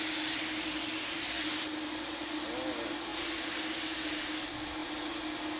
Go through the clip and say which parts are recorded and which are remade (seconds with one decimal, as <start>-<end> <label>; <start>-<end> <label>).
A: 0.0-5.6 recorded

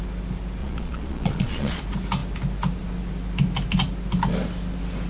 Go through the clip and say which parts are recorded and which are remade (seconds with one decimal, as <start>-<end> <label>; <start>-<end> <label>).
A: 0.0-0.6 recorded; 0.6-1.8 remade; 1.8-5.1 recorded

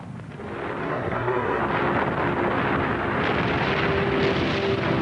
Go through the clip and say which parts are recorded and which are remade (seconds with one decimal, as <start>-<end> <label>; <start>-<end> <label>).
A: 0.0-0.8 recorded; 0.8-1.6 remade; 1.6-5.0 recorded

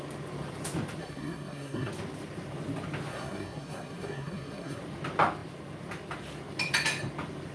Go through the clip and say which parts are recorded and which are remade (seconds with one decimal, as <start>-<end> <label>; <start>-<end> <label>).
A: 0.0-1.0 recorded; 1.0-1.9 remade; 1.9-3.1 recorded; 3.1-4.8 remade; 4.8-7.5 recorded

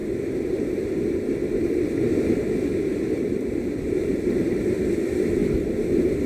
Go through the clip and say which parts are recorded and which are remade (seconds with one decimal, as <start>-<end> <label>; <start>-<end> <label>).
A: 0.0-5.4 remade; 5.4-6.3 recorded

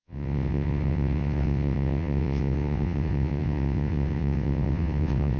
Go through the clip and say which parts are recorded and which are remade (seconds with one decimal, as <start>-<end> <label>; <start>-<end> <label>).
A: 0.0-5.4 remade